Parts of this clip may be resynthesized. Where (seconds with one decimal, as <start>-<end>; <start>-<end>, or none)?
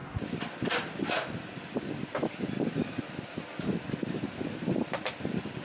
none